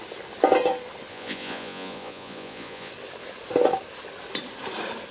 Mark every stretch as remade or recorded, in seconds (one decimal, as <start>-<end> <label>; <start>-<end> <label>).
0.0-1.1 recorded; 1.1-2.9 remade; 2.9-5.1 recorded